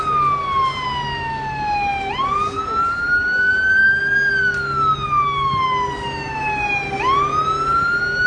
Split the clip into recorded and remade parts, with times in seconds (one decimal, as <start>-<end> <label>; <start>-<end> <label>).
0.0-8.3 recorded